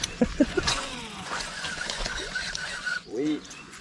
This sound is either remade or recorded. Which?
remade